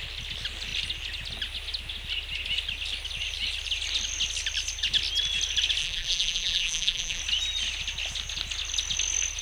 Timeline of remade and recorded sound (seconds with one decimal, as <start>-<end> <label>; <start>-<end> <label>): 0.0-5.8 recorded; 5.8-7.2 remade; 7.2-9.4 recorded